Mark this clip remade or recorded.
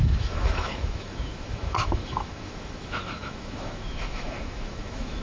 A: remade